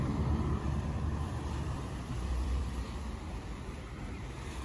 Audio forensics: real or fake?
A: fake